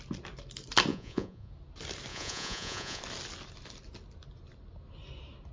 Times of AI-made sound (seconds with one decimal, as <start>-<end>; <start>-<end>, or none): 0.9-1.5; 2.1-3.0

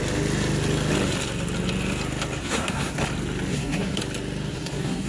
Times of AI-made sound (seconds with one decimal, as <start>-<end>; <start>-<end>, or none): 2.4-3.0; 3.5-4.0; 4.5-5.1

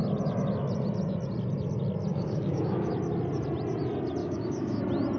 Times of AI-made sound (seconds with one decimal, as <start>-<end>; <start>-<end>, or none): 2.1-2.9; 4.2-4.8

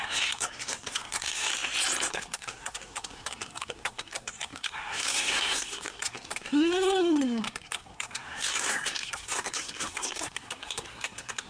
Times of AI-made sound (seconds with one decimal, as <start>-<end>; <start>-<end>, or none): 0.0-1.5; 2.1-11.5

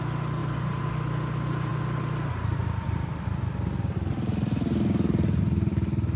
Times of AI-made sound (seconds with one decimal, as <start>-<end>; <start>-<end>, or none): 0.4-0.9

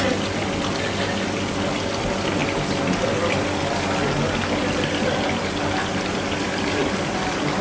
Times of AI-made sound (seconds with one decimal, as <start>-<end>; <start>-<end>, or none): none